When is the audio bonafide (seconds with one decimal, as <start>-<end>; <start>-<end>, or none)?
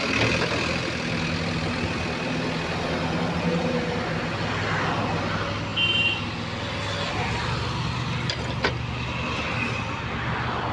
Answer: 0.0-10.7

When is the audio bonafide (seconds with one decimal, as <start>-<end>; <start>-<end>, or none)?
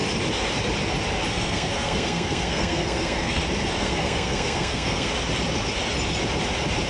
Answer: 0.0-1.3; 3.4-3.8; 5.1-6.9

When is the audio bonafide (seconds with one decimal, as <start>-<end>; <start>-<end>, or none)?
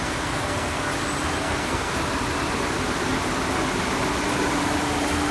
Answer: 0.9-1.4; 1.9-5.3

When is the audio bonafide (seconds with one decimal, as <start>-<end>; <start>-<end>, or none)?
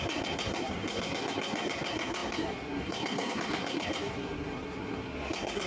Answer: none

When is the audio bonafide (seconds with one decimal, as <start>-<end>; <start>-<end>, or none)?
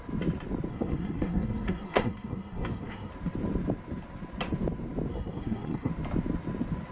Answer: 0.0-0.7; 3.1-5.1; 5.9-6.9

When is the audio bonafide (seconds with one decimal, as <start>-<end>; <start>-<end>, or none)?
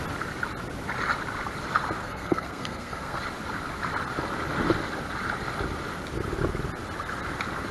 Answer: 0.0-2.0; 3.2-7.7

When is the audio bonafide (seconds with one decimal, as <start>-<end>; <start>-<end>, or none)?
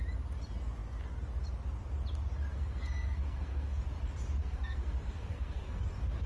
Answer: 0.0-2.5; 3.8-4.4; 5.8-6.3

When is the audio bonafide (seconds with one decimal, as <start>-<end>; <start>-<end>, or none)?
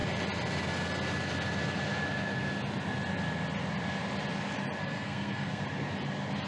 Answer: 0.0-4.8; 5.6-6.5